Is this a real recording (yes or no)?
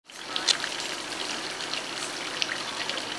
yes